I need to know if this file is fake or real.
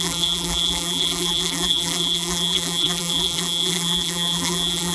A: fake